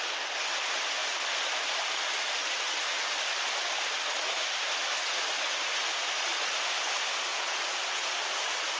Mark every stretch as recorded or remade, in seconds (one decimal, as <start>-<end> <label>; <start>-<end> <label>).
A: 0.0-7.3 recorded; 7.3-8.1 remade; 8.1-8.8 recorded